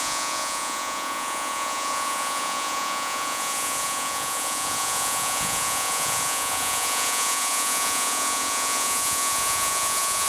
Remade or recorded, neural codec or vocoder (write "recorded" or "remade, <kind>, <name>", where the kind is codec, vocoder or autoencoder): remade, vocoder, Vocos